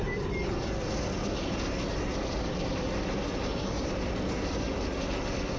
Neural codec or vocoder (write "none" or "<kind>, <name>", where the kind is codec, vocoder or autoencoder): none